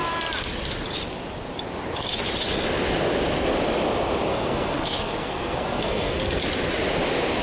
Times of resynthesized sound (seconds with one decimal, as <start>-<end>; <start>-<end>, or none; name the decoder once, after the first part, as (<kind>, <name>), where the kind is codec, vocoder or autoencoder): 4.3-6.4 (codec, SNAC)